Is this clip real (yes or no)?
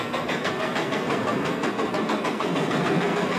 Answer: no